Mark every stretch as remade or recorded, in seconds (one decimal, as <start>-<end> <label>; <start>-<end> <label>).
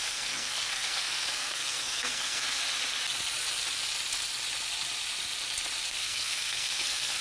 0.0-2.6 remade; 2.6-5.9 recorded; 5.9-7.2 remade